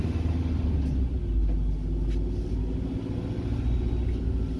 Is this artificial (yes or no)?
no